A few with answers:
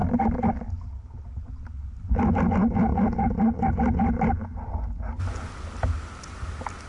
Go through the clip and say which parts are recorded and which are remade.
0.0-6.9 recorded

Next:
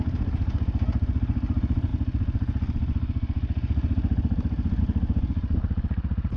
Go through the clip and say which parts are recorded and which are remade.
0.0-6.4 recorded

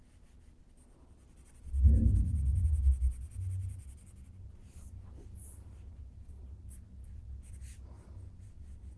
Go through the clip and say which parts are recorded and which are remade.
0.0-9.0 recorded

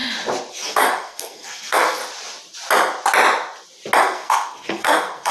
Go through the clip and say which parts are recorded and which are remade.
0.0-0.5 recorded; 0.5-2.0 remade; 2.0-4.0 recorded; 4.0-5.3 remade

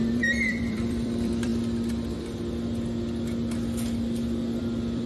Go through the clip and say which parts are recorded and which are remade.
0.0-1.5 remade; 1.5-4.6 recorded; 4.6-5.1 remade

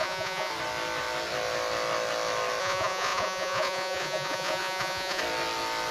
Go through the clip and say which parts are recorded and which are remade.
0.0-0.5 remade; 0.5-2.6 recorded; 2.6-5.2 remade; 5.2-5.9 recorded

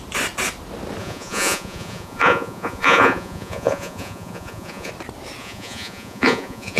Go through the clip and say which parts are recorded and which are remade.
0.0-1.0 recorded; 1.0-4.9 remade; 4.9-5.4 recorded; 5.4-6.8 remade